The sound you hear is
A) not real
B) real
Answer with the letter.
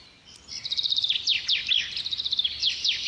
B